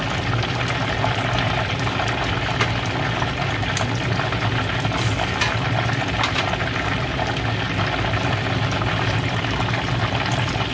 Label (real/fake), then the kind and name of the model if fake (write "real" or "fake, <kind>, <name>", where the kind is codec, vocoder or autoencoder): real